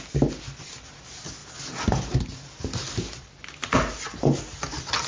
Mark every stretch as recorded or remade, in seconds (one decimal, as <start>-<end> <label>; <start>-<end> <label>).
0.0-5.1 recorded